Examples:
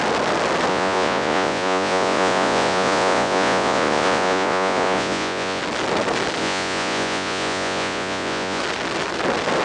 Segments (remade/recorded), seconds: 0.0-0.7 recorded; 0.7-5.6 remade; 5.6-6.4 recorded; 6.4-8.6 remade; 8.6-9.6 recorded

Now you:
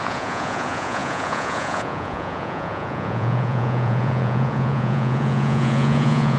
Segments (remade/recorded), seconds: 0.0-6.4 remade